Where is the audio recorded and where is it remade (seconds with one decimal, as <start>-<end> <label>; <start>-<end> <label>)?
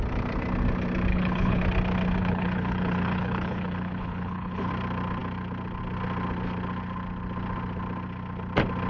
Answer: 0.0-1.1 recorded; 1.1-1.6 remade; 1.6-2.2 recorded; 2.2-4.7 remade; 4.7-8.9 recorded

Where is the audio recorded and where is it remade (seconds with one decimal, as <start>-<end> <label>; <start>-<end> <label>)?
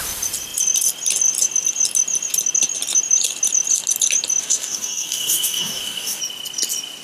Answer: 0.0-4.4 recorded; 4.4-6.2 remade; 6.2-7.0 recorded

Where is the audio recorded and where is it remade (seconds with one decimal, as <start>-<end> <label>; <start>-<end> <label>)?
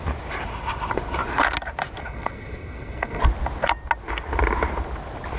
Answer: 0.0-2.0 recorded; 2.0-3.2 remade; 3.2-5.4 recorded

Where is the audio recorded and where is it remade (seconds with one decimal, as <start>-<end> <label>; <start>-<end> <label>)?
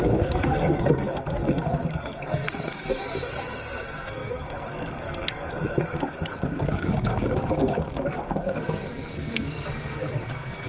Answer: 0.0-10.7 remade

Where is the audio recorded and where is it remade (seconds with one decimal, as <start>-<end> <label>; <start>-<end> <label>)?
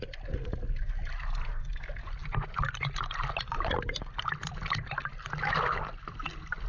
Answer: 0.0-6.7 recorded